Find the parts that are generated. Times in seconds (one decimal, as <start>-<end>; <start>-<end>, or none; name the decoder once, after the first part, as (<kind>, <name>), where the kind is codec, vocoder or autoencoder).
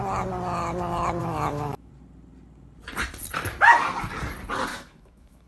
1.2-1.9 (autoencoder, DAC-VAE); 4.7-5.5